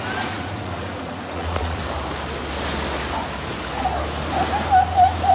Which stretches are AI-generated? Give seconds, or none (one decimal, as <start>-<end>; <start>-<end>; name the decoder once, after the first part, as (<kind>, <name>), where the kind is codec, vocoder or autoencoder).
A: 0.0-1.8 (vocoder, Vocos)